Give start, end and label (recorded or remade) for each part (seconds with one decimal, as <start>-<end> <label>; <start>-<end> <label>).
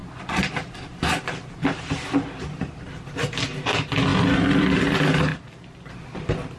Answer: 0.0-6.6 recorded